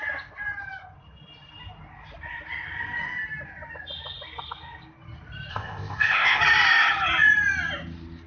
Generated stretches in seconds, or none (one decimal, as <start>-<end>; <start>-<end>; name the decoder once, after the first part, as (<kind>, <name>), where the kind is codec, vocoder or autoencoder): 5.5-6.4 (codec, ZipCodec)